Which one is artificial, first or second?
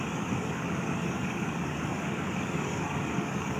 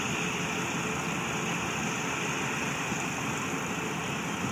first